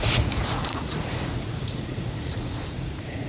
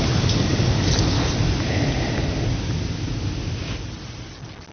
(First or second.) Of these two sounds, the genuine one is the second